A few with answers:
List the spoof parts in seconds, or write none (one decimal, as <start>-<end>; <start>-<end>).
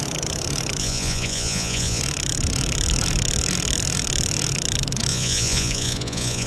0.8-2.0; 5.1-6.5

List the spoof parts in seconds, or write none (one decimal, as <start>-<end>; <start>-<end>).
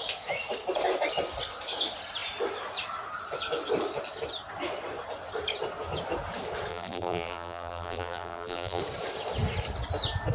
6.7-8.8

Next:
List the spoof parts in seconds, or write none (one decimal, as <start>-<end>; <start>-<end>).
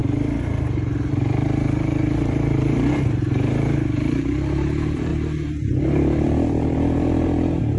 1.1-5.1; 5.8-7.8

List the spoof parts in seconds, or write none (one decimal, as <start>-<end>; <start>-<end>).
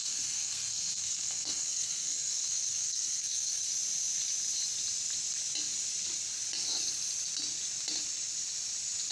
0.0-3.7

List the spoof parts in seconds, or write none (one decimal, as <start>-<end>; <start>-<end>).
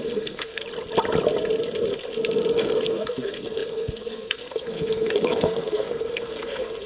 0.0-0.6; 2.5-6.9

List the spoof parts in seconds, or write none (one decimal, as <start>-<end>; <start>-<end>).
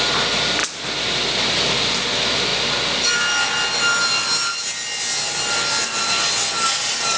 none